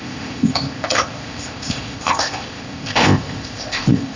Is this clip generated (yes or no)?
yes